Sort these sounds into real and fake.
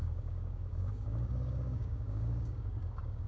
fake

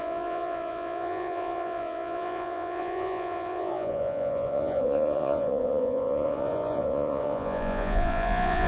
fake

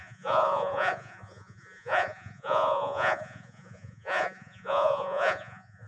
fake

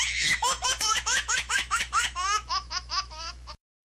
fake